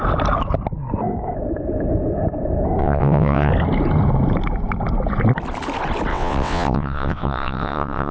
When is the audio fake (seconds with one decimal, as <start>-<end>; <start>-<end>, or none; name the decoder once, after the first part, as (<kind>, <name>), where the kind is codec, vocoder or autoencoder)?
2.8-3.5 (vocoder, WaveNeXt); 6.1-8.1